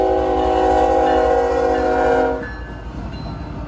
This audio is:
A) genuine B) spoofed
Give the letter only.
A